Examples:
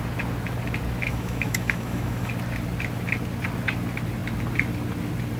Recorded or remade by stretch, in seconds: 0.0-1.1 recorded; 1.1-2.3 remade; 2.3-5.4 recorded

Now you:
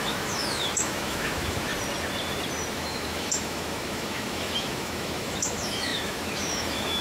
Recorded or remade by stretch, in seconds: 0.0-1.7 remade; 1.7-2.7 recorded; 2.7-7.0 remade

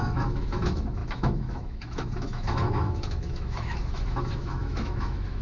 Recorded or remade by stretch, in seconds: 0.0-5.4 remade